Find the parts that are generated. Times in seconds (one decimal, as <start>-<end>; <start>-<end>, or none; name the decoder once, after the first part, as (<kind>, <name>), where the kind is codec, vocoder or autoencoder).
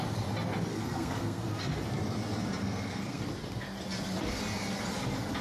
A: 0.7-1.6 (codec, SNAC); 2.6-3.2